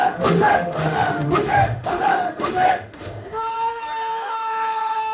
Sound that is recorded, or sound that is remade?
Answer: remade